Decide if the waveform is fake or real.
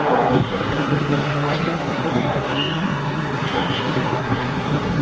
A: fake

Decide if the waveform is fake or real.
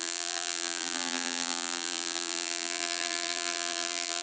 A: fake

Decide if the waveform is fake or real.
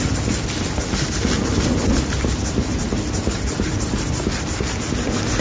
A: real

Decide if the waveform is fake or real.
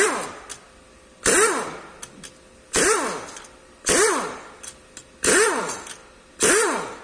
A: real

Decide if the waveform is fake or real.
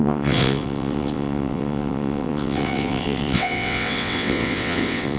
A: fake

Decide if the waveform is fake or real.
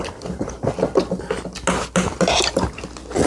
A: real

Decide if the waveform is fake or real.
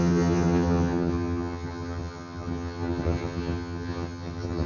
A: fake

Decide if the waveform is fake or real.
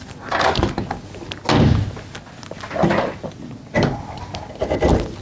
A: real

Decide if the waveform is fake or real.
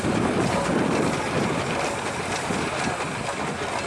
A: real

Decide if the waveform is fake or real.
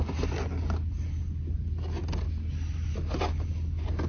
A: real